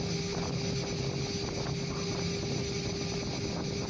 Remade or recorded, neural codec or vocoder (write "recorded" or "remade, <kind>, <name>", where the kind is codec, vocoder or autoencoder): recorded